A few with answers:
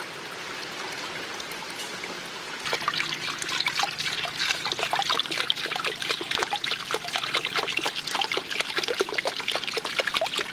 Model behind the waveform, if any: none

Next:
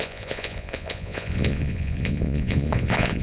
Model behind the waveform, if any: vocoder, Vocos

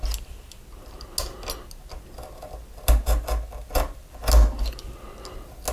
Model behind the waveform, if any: none